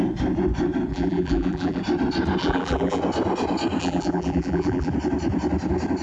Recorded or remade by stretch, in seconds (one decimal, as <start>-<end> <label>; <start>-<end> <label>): 0.0-0.9 recorded; 0.9-1.8 remade; 1.8-2.4 recorded; 2.4-3.0 remade; 3.0-3.8 recorded; 3.8-4.9 remade; 4.9-6.0 recorded